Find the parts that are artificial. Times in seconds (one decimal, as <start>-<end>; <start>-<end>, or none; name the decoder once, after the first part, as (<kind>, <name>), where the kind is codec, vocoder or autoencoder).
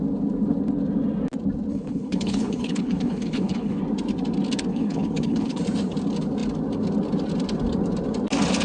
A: 1.7-3.8 (codec, HILCodec); 4.7-5.6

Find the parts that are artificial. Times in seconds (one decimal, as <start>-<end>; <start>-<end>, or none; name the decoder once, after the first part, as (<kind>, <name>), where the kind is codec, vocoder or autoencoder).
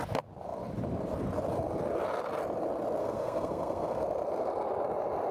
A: 3.0-4.0 (codec, SNAC)